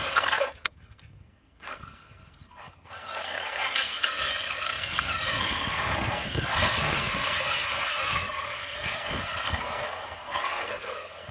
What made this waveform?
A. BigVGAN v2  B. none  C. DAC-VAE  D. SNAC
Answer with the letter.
D